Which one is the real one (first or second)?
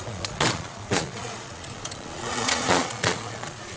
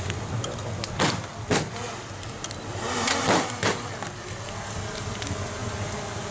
second